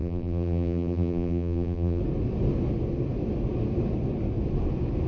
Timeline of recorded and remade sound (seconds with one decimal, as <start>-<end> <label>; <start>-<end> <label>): 0.0-2.0 remade; 2.0-5.1 recorded